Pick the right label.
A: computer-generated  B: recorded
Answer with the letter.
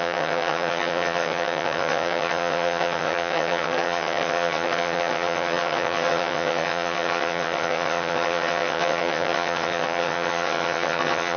A